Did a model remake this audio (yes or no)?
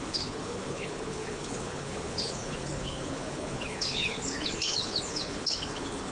yes